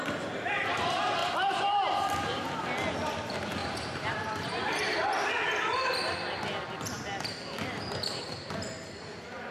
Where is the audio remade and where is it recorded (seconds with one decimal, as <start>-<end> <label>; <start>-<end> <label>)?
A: 0.0-3.6 recorded; 3.6-5.3 remade; 5.3-9.5 recorded